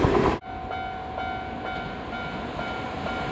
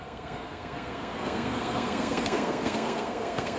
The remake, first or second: second